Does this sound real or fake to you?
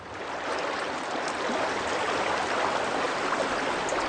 real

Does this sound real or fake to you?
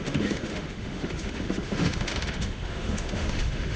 fake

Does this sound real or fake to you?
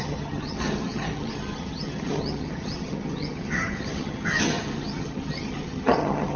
fake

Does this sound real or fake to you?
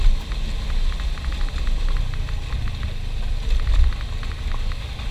real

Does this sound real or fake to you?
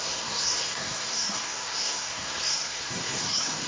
fake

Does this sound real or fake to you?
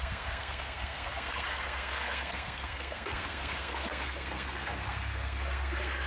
fake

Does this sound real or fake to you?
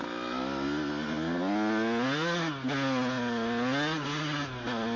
real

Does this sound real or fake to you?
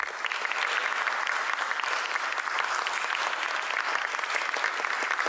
real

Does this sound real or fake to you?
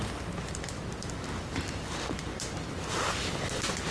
real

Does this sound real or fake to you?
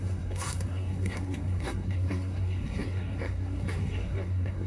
fake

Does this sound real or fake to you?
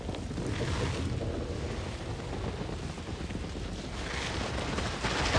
real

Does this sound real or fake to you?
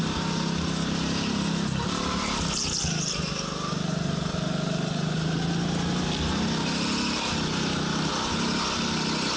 real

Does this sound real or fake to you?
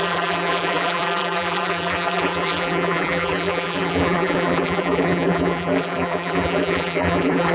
fake